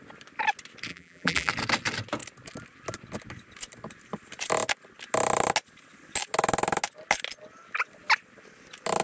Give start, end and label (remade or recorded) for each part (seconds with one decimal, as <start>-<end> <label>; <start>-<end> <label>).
0.0-0.9 recorded; 0.9-1.5 remade; 1.5-9.0 recorded